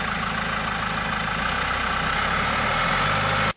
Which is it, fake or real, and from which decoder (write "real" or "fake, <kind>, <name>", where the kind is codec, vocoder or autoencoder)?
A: real